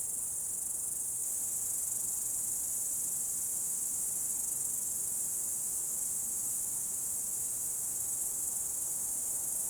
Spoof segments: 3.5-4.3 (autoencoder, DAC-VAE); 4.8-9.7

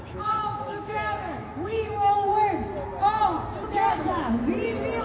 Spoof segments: 0.0-2.3 (autoencoder, DAC-VAE); 3.9-4.4

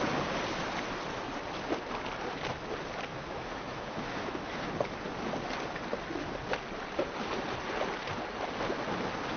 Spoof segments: 3.1-4.7 (autoencoder, DAC-VAE)

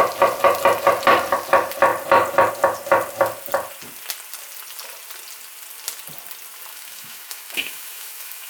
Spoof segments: 6.7-8.5 (autoencoder, DAC-VAE)

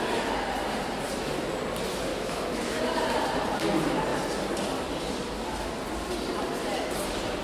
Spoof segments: 2.1-2.8 (autoencoder, DAC-VAE)

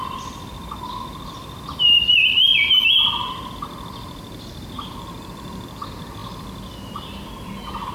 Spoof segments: none